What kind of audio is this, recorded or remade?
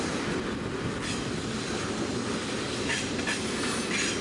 recorded